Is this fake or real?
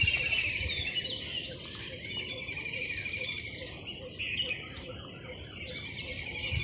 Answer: real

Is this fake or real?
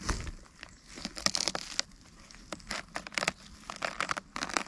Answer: real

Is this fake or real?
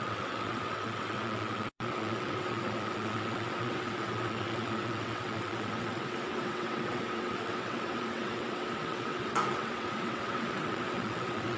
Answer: fake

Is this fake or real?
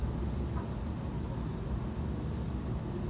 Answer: real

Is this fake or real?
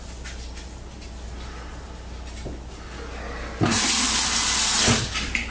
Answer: real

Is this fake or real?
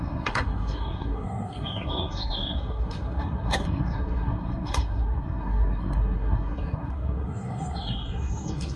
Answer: fake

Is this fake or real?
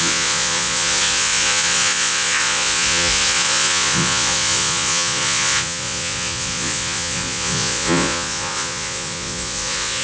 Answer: fake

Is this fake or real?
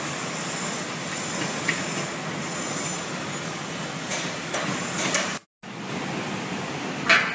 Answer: real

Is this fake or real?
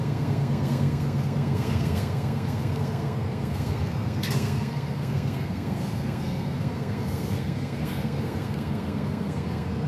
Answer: fake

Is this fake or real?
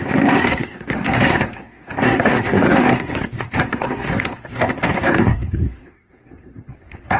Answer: fake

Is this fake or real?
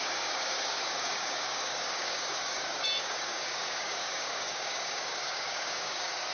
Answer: fake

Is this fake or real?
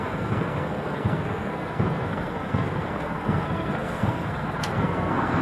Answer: fake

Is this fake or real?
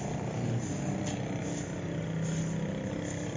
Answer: real